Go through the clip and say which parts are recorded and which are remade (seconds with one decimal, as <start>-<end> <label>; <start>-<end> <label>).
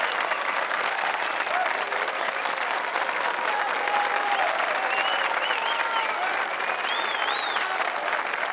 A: 0.0-0.7 recorded; 0.7-1.2 remade; 1.2-8.5 recorded